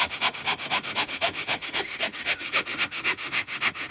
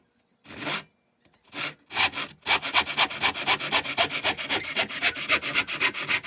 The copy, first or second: first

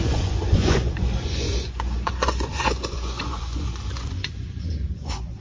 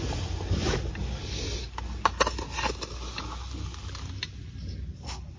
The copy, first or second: first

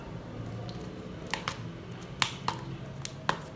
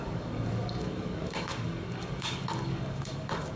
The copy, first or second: second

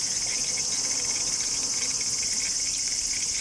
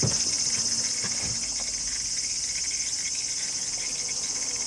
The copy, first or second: first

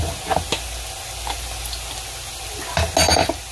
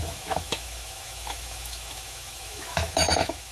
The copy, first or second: second